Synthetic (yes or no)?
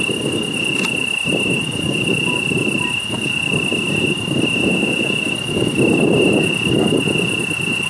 no